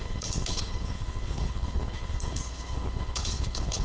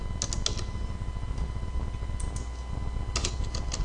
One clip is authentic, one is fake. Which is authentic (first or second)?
second